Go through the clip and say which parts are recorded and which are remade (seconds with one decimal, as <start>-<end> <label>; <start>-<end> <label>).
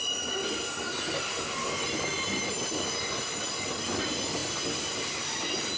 0.0-5.8 recorded